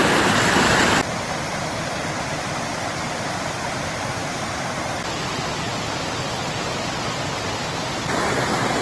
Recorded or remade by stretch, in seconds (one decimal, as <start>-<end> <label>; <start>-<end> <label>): 0.0-8.8 recorded